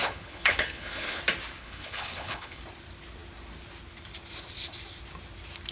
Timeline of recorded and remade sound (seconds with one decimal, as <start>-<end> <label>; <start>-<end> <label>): 0.0-1.2 remade; 1.2-1.6 recorded; 1.6-2.6 remade; 2.6-5.7 recorded